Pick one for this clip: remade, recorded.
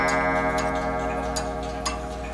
recorded